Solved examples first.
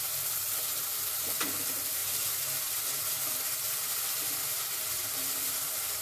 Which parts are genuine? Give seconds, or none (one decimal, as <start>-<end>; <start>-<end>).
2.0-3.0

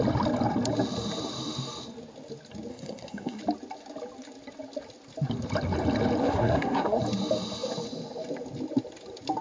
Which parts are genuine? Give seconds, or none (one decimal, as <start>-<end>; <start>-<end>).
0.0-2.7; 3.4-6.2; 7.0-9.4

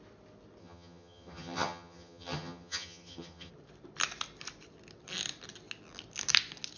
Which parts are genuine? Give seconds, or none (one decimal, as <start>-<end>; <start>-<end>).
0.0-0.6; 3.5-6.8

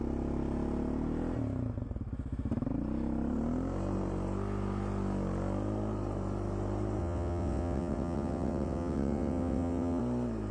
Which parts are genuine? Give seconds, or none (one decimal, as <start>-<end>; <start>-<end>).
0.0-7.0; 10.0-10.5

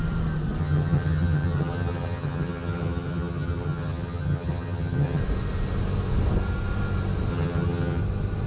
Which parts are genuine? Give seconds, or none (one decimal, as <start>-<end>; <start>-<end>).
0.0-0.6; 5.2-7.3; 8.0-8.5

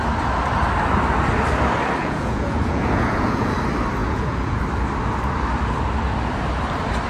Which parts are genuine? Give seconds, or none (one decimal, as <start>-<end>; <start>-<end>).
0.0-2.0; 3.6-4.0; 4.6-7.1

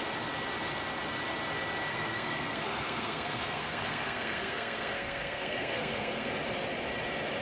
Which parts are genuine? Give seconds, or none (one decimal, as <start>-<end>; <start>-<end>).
0.0-1.9; 6.3-7.4

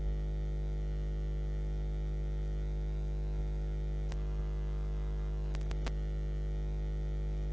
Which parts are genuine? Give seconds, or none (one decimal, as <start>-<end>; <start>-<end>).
0.0-7.5